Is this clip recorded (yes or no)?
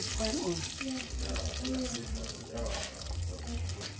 yes